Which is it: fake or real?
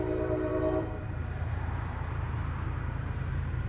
fake